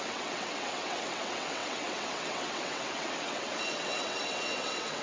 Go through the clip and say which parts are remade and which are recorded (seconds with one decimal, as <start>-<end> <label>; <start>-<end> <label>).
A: 0.0-5.0 remade